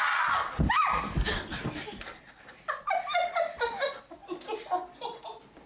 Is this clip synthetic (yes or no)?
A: no